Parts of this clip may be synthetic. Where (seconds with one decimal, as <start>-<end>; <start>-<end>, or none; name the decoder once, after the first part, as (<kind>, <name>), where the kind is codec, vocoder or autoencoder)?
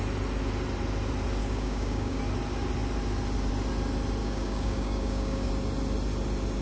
1.4-2.2 (codec, DAC); 4.2-5.5